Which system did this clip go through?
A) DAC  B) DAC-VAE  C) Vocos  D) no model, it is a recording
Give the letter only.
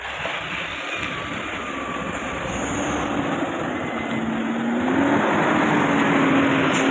D